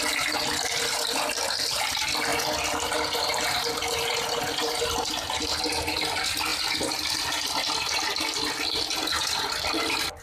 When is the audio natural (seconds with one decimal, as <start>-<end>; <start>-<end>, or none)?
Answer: 0.0-10.2